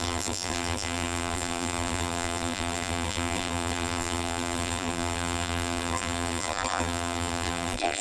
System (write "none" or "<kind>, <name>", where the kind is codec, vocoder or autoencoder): vocoder, BigVGAN v2